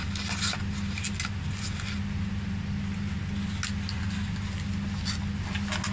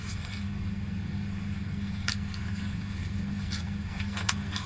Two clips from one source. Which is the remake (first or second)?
second